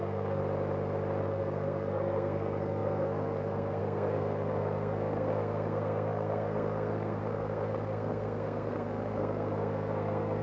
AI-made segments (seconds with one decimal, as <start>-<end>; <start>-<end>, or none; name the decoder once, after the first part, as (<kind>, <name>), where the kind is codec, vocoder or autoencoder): 0.0-0.4 (codec, SNAC); 1.2-10.4